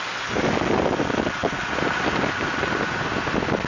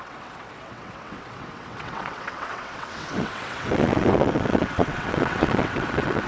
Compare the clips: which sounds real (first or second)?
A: first